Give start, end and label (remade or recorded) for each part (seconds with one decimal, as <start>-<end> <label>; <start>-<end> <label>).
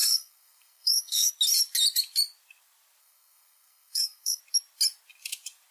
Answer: 0.0-1.3 remade; 1.3-3.0 recorded; 3.0-4.4 remade; 4.4-5.7 recorded